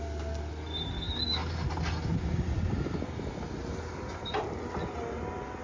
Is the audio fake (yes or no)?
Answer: no